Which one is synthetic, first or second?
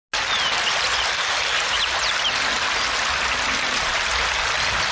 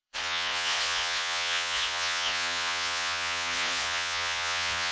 second